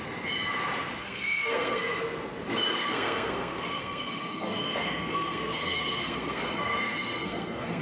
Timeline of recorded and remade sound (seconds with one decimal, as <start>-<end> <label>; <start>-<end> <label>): 0.0-1.0 recorded; 1.0-2.0 remade; 2.0-2.7 recorded; 2.7-7.8 remade